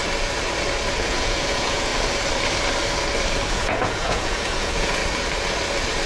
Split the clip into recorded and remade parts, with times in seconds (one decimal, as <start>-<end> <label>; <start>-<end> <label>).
0.0-0.9 recorded; 0.9-1.9 remade; 1.9-3.5 recorded; 3.5-5.0 remade; 5.0-6.1 recorded

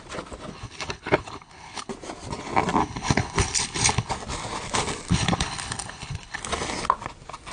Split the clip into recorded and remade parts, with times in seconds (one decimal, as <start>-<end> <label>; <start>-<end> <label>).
0.0-0.5 recorded; 0.5-1.9 remade; 1.9-2.8 recorded; 2.8-4.1 remade; 4.1-5.1 recorded; 5.1-6.4 remade; 6.4-7.5 recorded

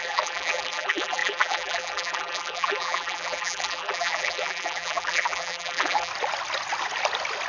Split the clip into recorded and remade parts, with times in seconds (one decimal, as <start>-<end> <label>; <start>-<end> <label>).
0.0-6.1 remade; 6.1-7.5 recorded

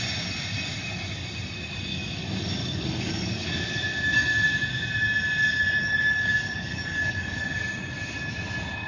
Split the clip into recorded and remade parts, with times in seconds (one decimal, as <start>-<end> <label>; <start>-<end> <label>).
0.0-1.9 recorded; 1.9-3.5 remade; 3.5-5.8 recorded; 5.8-7.6 remade; 7.6-8.9 recorded

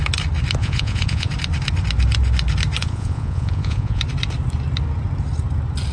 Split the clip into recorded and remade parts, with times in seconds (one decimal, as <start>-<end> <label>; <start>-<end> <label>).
0.0-0.6 recorded; 0.6-1.3 remade; 1.3-2.8 recorded; 2.8-4.0 remade; 4.0-5.9 recorded